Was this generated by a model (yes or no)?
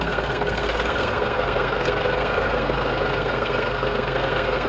yes